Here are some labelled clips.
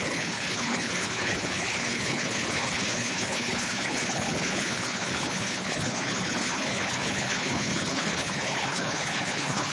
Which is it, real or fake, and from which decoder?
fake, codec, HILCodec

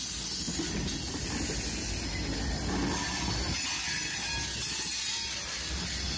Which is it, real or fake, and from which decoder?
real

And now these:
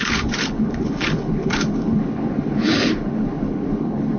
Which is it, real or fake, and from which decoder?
fake, codec, HILCodec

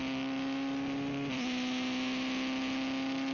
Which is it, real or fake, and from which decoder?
real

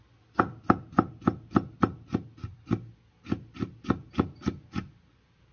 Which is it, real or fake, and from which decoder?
real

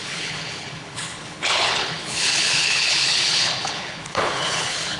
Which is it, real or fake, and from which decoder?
fake, codec, HILCodec